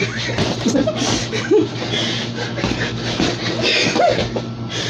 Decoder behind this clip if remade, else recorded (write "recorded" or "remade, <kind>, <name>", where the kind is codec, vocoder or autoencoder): recorded